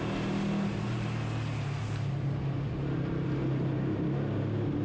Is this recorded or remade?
recorded